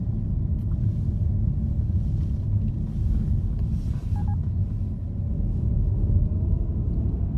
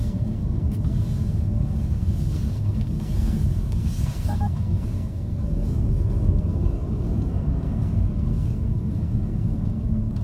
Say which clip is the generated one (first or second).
second